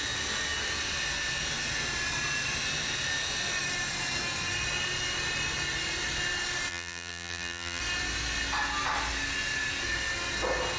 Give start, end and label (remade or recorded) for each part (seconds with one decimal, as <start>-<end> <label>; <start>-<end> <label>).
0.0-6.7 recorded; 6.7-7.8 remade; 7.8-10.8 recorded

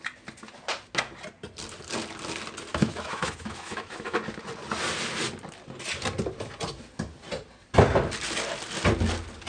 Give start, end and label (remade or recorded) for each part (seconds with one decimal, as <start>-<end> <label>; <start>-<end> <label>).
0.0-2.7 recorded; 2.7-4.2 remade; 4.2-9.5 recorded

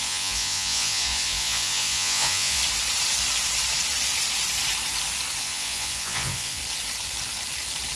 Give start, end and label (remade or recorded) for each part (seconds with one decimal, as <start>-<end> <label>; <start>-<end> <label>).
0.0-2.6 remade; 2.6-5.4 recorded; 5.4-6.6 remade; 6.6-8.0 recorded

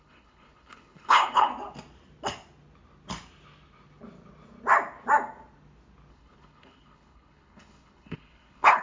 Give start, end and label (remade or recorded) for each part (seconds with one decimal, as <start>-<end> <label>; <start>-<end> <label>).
0.0-1.5 remade; 1.5-6.1 recorded; 6.1-8.8 remade